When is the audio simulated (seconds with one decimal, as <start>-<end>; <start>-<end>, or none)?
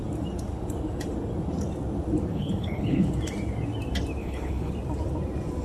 2.3-3.1; 4.2-4.7